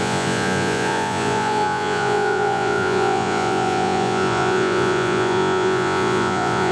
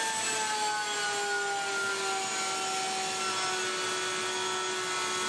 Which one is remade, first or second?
first